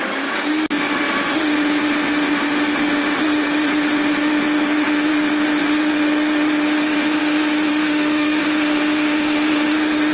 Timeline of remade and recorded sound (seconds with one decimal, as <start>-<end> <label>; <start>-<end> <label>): 0.0-7.7 recorded; 7.7-8.4 remade; 8.4-10.1 recorded